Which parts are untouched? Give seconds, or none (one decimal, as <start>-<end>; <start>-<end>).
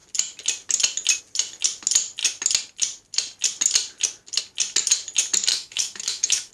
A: 0.0-5.5